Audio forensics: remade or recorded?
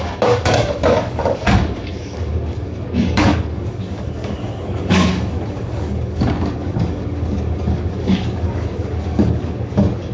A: remade